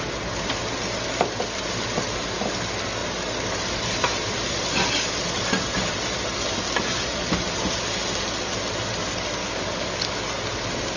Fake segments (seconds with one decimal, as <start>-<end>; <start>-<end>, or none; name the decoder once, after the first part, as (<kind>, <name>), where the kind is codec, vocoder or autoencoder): 9.4-10.2 (codec, DAC)